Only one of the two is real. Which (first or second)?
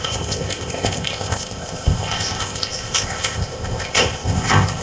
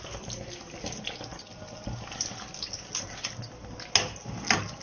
second